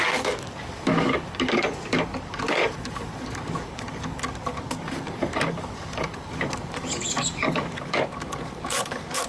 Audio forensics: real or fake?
fake